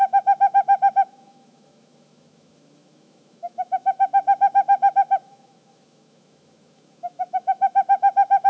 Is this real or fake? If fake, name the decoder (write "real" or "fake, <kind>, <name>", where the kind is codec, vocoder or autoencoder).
fake, autoencoder, DAC-VAE